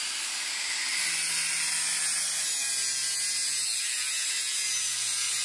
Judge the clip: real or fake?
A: real